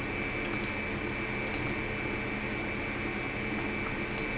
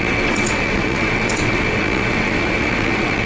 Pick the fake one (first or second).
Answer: second